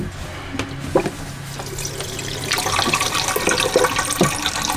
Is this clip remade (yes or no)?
no